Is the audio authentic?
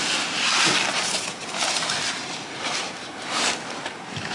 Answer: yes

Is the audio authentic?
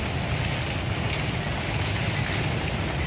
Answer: yes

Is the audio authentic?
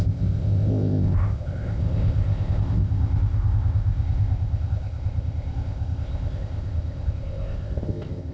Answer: no